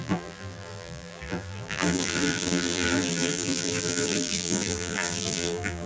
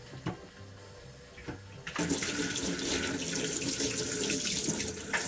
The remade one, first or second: first